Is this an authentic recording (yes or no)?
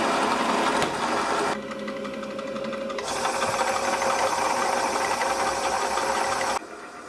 yes